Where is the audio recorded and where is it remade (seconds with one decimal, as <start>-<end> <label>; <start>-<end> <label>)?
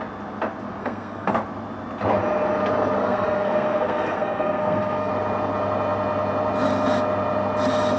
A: 0.0-0.8 recorded; 0.8-1.3 remade; 1.3-3.0 recorded; 3.0-5.1 remade; 5.1-8.0 recorded